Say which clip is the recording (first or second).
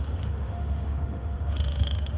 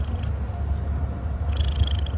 second